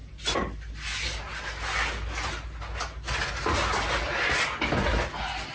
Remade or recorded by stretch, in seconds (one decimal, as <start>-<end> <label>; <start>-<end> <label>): 0.0-5.5 recorded